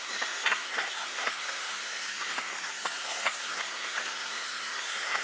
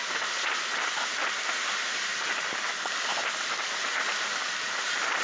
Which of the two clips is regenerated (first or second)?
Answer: first